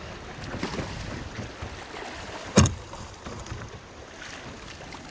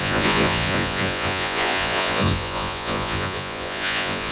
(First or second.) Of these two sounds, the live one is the first